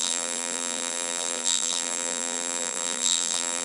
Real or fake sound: fake